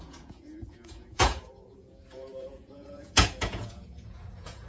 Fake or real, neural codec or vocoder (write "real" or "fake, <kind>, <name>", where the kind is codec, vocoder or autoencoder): fake, vocoder, Vocos